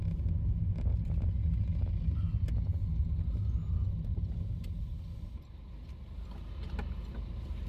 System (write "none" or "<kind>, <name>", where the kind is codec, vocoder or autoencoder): none